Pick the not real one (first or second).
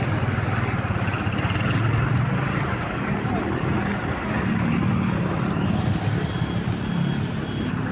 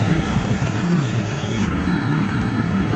second